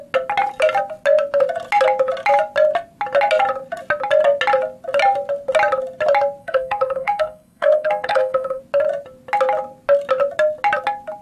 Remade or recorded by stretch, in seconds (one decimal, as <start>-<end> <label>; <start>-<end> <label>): 0.0-6.4 recorded; 6.4-8.6 remade; 8.6-11.2 recorded